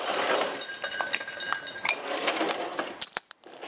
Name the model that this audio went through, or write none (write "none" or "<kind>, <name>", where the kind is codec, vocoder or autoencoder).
none